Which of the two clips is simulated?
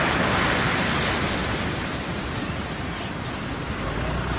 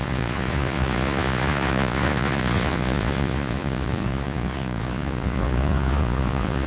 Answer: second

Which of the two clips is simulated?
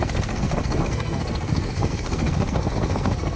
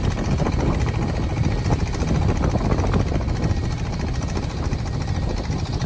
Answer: first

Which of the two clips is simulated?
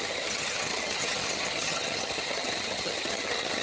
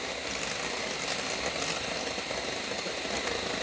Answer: first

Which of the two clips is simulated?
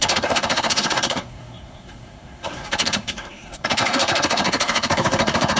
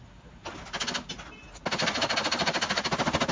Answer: first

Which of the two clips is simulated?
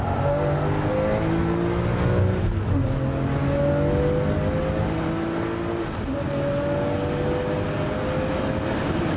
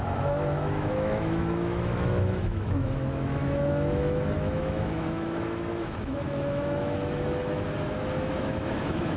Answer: second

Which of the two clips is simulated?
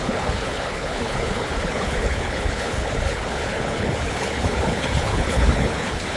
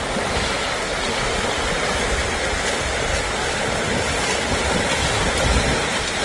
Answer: first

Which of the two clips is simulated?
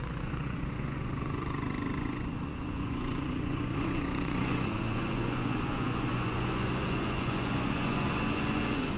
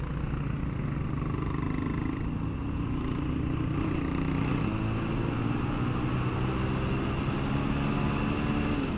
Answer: first